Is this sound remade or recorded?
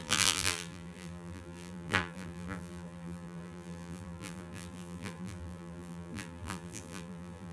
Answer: remade